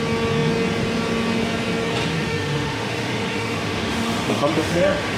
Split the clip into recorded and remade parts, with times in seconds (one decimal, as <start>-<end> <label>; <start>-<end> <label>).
0.0-2.0 recorded; 2.0-5.2 remade